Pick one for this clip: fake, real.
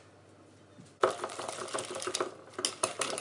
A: real